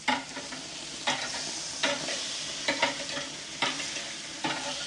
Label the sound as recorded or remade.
recorded